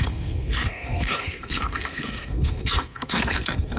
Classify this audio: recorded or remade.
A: remade